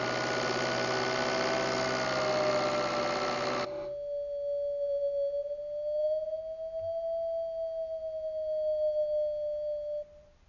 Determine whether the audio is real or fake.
real